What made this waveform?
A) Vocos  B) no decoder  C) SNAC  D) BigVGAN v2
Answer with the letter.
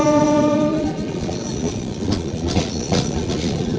A